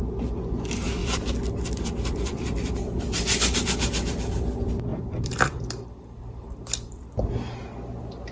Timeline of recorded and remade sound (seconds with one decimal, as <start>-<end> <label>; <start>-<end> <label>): 0.0-1.0 recorded; 1.0-2.8 remade; 2.8-4.9 recorded; 4.9-7.3 remade; 7.3-8.3 recorded